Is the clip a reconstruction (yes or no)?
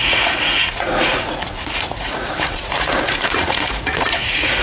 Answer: yes